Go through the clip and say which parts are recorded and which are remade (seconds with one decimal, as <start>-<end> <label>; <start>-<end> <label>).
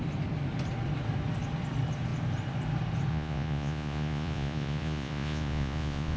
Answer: 0.0-3.1 recorded; 3.1-6.2 remade